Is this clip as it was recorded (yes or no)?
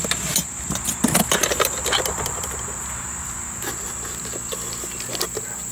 yes